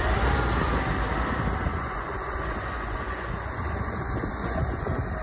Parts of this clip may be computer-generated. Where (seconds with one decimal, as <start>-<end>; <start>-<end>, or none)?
1.7-4.8